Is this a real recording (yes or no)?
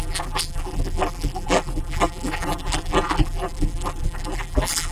no